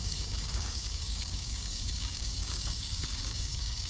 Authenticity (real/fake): fake